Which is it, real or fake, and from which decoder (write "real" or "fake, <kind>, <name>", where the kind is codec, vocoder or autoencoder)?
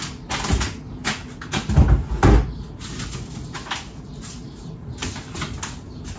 real